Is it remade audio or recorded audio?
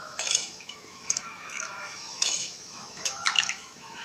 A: remade